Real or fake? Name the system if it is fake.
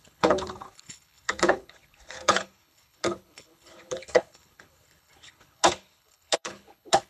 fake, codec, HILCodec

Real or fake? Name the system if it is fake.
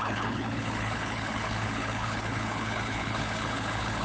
fake, codec, HILCodec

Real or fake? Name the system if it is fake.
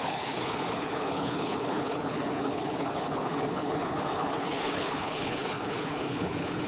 fake, codec, HILCodec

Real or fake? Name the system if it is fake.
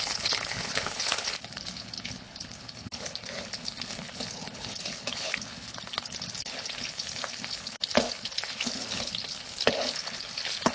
fake, codec, HILCodec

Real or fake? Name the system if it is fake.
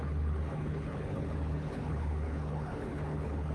fake, codec, HILCodec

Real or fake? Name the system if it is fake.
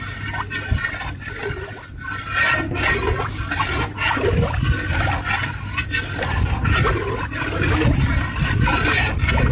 real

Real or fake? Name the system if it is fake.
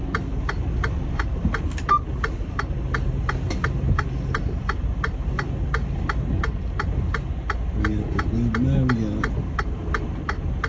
real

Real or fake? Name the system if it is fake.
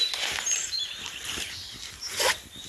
real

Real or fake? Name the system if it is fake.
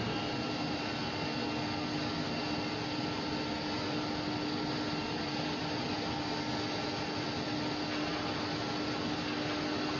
real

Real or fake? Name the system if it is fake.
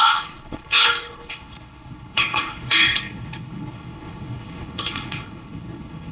fake, codec, HILCodec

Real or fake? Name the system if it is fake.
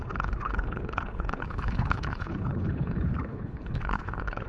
fake, codec, HILCodec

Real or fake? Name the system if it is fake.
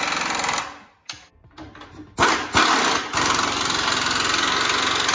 real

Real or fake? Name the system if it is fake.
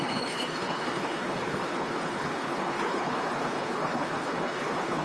fake, codec, HILCodec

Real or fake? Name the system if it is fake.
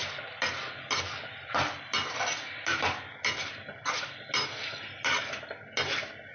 real